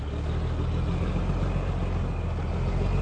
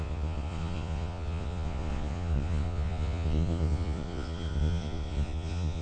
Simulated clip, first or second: second